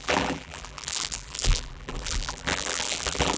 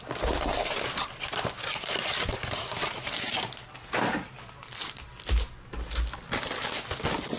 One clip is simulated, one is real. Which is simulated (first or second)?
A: first